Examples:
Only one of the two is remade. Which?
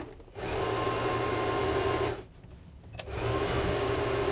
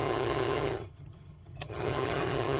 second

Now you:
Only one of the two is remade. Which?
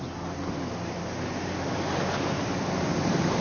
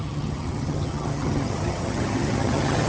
second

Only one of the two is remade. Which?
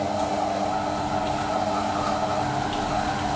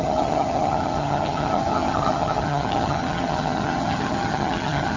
second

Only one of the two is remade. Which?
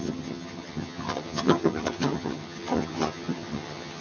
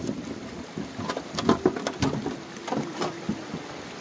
first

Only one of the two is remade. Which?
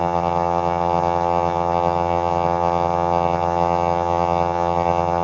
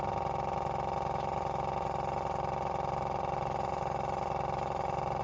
first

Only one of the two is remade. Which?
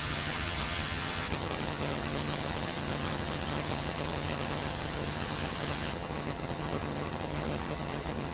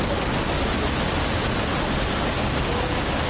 first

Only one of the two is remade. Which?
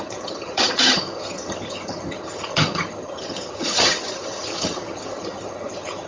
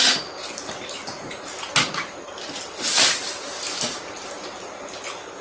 first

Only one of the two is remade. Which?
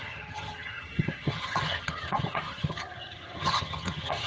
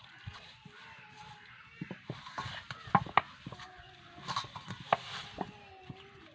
first